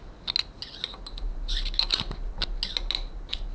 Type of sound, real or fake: real